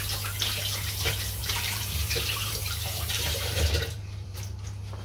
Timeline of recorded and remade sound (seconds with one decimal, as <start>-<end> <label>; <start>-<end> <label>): 0.0-1.4 recorded; 1.4-4.4 remade; 4.4-5.0 recorded